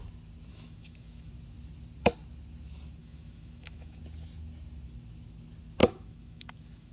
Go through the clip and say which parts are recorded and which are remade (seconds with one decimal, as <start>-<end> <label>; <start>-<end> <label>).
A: 0.0-0.5 recorded; 0.5-1.3 remade; 1.3-3.0 recorded; 3.0-4.0 remade; 4.0-5.8 recorded; 5.8-6.9 remade

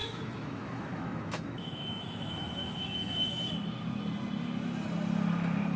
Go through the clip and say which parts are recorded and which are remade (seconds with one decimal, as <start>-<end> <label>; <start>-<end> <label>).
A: 0.0-3.5 remade; 3.5-5.8 recorded

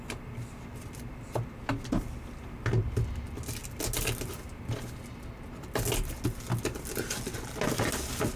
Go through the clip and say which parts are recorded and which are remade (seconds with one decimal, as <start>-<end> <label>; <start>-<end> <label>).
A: 0.0-8.4 recorded

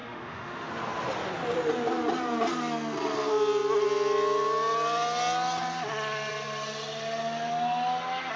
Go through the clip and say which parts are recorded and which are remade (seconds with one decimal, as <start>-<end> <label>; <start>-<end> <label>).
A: 0.0-0.7 remade; 0.7-8.4 recorded

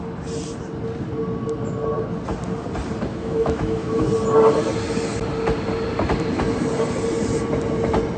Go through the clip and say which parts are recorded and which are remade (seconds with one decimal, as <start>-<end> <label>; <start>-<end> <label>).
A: 0.0-3.1 recorded; 3.1-4.1 remade; 4.1-8.2 recorded

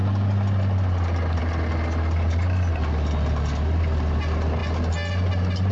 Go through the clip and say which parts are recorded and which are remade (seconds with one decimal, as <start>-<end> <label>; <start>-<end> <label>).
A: 0.0-5.7 recorded

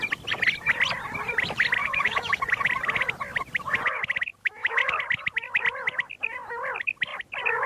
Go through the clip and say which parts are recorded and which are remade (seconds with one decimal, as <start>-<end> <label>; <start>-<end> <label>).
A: 0.0-1.8 recorded; 1.8-2.4 remade; 2.4-4.4 recorded; 4.4-5.0 remade; 5.0-7.7 recorded